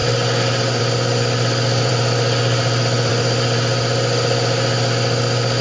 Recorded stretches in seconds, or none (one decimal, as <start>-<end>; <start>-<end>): 0.0-5.6